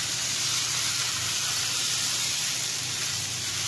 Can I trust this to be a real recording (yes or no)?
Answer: no